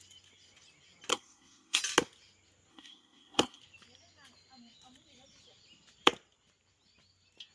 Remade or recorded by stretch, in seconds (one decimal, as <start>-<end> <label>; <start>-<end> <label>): 0.0-1.1 recorded; 1.1-1.8 remade; 1.8-2.7 recorded; 2.7-3.6 remade; 3.6-7.5 recorded